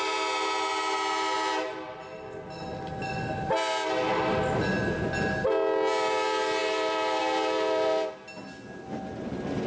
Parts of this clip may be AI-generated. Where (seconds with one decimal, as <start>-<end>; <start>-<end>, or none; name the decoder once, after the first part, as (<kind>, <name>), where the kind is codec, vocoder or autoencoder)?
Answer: none